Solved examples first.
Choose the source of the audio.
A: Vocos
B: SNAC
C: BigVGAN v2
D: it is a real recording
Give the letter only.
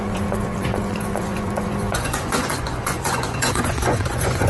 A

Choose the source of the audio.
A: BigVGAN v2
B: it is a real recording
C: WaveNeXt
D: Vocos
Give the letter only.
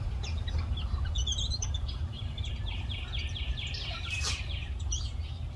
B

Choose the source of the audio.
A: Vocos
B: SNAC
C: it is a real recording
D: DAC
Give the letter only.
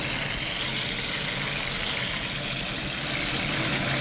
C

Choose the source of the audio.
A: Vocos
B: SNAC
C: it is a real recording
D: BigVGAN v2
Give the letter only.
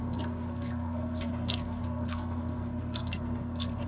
B